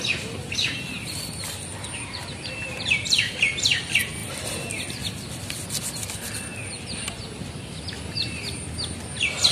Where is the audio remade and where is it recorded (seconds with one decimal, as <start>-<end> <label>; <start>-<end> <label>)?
0.0-2.2 recorded; 2.2-3.8 remade; 3.8-9.5 recorded